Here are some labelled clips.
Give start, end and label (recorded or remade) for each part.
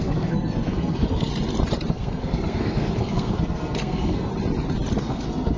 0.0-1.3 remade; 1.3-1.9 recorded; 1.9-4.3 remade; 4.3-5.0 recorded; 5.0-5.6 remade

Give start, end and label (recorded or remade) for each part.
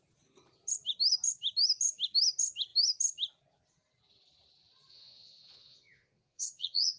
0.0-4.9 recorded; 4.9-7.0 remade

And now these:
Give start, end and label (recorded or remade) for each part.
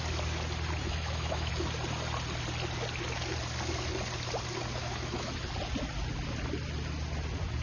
0.0-0.8 recorded; 0.8-1.5 remade; 1.5-4.8 recorded; 4.8-5.4 remade; 5.4-7.6 recorded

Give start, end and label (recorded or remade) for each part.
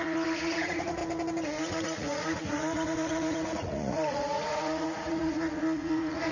0.0-1.0 remade; 1.0-1.6 recorded; 1.6-6.3 remade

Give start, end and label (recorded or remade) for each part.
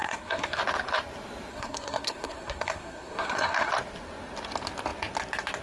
0.0-0.6 remade; 0.6-1.5 recorded; 1.5-3.7 remade; 3.7-5.6 recorded